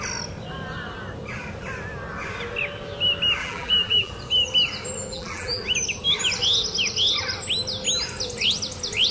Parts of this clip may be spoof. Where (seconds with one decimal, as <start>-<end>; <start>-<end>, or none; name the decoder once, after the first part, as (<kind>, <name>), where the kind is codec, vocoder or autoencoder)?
3.4-4.1 (vocoder, BigVGAN v2); 5.1-5.6